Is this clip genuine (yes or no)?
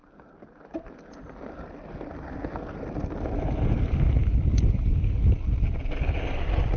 yes